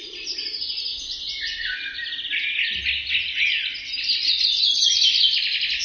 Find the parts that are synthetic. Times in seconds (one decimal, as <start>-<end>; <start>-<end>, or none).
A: none